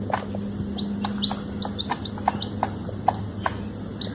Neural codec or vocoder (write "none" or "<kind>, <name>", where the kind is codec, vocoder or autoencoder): none